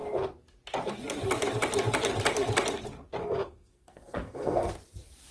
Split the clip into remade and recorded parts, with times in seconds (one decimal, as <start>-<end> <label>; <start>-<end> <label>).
0.0-3.2 recorded; 3.2-4.7 remade; 4.7-5.3 recorded

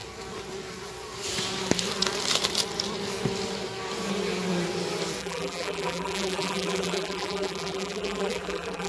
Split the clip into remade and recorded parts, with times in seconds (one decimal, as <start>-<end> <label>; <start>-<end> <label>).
0.0-5.2 recorded; 5.2-8.9 remade

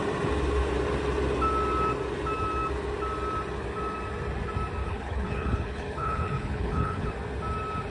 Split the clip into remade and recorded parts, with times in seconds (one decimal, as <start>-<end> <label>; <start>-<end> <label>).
0.0-4.8 recorded; 4.8-7.1 remade; 7.1-7.9 recorded